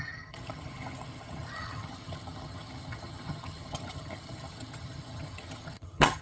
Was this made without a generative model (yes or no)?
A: no